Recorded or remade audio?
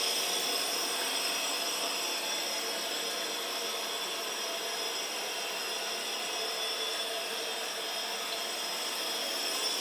recorded